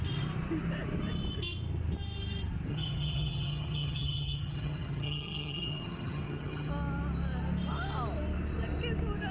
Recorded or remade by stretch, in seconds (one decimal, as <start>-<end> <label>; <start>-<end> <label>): 0.0-2.7 recorded; 2.7-6.7 remade; 6.7-9.3 recorded